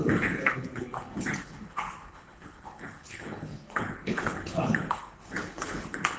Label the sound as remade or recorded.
remade